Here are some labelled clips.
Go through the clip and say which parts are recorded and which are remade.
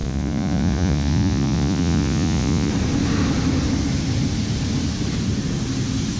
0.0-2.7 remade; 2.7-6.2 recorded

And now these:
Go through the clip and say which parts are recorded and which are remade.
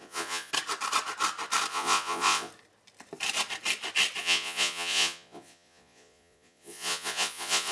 0.0-0.5 remade; 0.5-1.7 recorded; 1.7-2.5 remade; 2.5-4.2 recorded; 4.2-7.7 remade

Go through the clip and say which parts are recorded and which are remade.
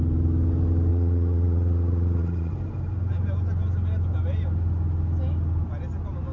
0.0-0.9 recorded; 0.9-2.5 remade; 2.5-6.3 recorded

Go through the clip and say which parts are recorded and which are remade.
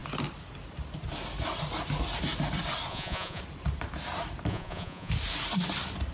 0.0-2.9 recorded; 2.9-3.4 remade; 3.4-4.5 recorded; 4.5-5.1 remade; 5.1-6.1 recorded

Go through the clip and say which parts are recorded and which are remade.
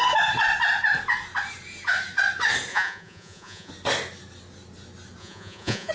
0.0-2.7 recorded; 2.7-3.7 remade; 3.7-5.2 recorded; 5.2-5.9 remade